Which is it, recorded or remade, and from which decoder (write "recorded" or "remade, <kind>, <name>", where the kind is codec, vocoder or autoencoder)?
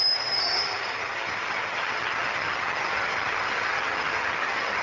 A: remade, vocoder, HiFi-GAN